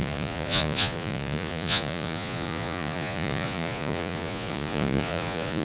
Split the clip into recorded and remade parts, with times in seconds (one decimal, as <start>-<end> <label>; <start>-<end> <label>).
0.0-5.6 remade